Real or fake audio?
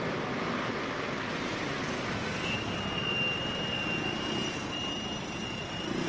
real